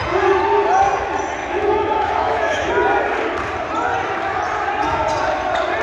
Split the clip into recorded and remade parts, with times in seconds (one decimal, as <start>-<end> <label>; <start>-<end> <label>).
0.0-1.4 recorded; 1.4-2.7 remade; 2.7-5.8 recorded